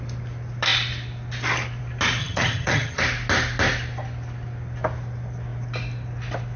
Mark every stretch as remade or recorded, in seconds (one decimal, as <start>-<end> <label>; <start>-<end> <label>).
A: 0.0-2.2 recorded; 2.2-3.0 remade; 3.0-6.6 recorded